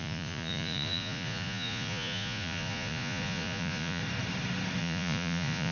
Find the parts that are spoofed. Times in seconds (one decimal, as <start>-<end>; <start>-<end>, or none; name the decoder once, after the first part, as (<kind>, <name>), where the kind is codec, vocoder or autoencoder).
0.0-4.0 (vocoder, Vocos); 4.8-5.7